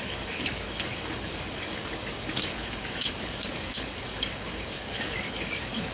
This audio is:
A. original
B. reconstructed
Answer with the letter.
B